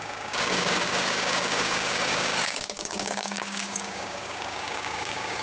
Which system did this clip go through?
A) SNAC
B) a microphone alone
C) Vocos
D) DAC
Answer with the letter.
D